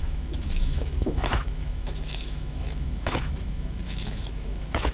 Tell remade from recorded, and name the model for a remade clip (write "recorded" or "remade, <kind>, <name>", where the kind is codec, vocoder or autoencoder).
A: remade, autoencoder, DAC-VAE